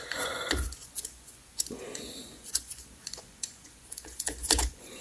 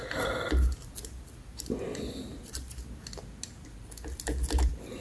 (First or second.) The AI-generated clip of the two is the first